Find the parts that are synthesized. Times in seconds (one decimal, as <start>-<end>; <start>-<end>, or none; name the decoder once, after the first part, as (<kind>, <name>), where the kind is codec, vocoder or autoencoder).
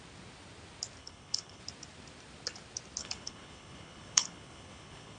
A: 1.0-1.6 (codec, HILCodec); 3.0-5.2